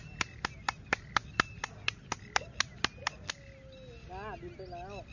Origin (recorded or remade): recorded